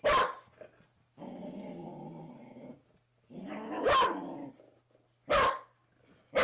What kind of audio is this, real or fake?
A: real